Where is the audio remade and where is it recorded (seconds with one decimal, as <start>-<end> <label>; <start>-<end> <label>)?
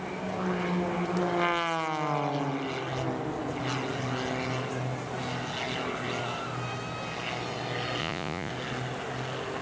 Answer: 0.0-8.0 recorded; 8.0-8.5 remade; 8.5-9.6 recorded